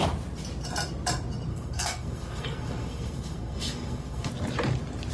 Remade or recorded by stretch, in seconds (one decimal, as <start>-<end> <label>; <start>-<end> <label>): 0.0-1.5 recorded; 1.5-4.3 remade; 4.3-5.1 recorded